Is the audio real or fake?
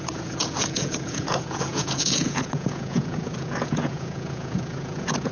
fake